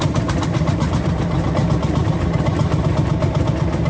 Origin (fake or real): real